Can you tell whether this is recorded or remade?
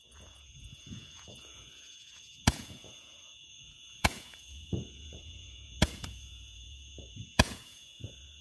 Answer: remade